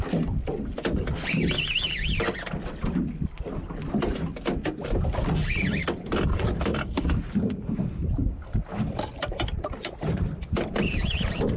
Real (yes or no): yes